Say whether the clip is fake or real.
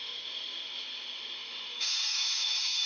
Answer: fake